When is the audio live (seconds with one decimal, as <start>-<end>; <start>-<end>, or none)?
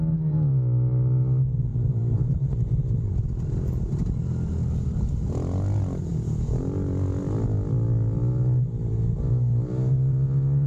0.0-1.7; 2.7-10.7